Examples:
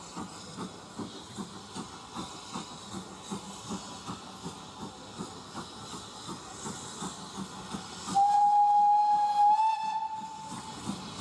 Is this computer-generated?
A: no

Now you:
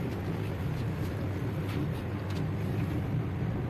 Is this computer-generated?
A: yes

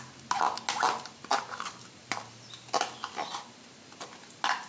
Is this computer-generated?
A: no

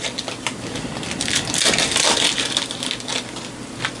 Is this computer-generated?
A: no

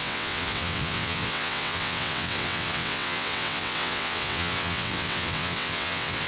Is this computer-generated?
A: yes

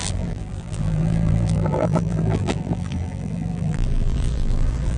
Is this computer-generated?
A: yes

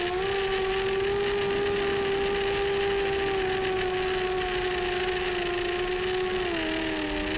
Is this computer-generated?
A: no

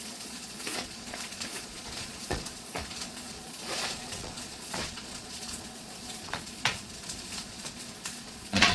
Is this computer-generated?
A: yes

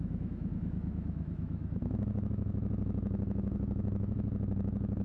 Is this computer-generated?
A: yes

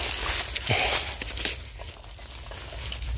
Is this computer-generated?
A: no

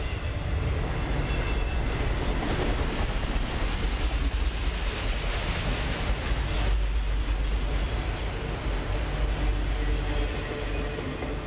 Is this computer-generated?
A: no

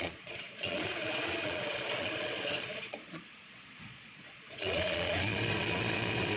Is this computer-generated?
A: yes